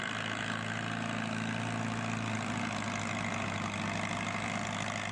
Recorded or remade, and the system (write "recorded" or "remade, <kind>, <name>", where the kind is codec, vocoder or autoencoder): recorded